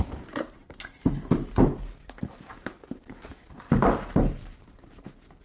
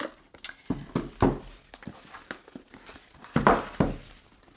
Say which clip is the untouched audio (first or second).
second